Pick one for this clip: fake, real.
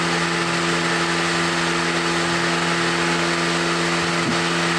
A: real